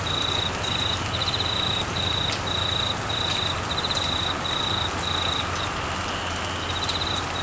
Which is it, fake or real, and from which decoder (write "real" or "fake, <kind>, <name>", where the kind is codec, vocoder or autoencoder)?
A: real